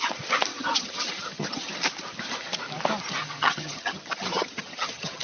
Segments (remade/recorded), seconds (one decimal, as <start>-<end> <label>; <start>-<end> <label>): 0.0-0.5 recorded; 0.5-1.8 remade; 1.8-3.2 recorded; 3.2-5.2 remade